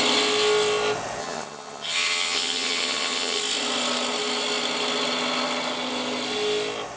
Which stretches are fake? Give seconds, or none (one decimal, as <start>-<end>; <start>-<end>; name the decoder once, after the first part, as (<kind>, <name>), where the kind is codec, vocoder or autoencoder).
1.2-3.4 (vocoder, HiFi-GAN)